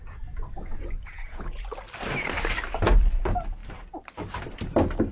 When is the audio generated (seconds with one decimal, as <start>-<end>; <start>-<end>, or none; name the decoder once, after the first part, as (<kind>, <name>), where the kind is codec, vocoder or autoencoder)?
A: 1.1-1.7 (vocoder, Vocos)